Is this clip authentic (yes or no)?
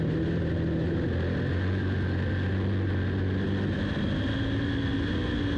yes